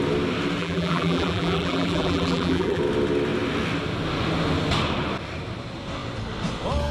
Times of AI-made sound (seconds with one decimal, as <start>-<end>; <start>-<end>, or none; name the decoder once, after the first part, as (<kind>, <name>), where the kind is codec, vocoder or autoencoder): 0.6-2.8 (vocoder, BigVGAN v2)